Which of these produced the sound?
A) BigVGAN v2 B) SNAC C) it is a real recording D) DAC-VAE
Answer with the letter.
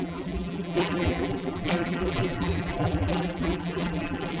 A